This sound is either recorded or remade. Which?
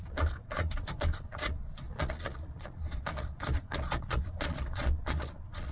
remade